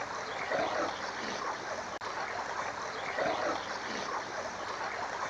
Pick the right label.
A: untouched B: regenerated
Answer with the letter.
A